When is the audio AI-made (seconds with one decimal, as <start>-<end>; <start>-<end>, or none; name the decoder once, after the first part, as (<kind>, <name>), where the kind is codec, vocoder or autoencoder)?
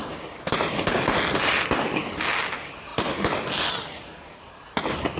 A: none